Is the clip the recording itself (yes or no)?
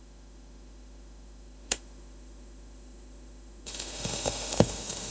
no